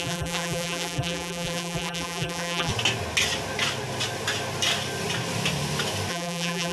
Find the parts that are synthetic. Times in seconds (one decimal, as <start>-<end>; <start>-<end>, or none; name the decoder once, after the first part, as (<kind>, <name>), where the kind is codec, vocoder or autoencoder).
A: 0.0-2.7 (vocoder, BigVGAN v2); 6.1-6.7